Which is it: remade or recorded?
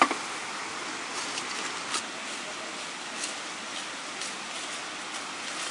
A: recorded